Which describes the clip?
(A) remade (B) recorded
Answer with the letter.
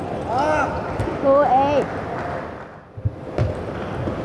B